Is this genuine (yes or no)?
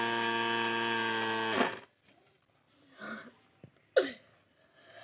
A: yes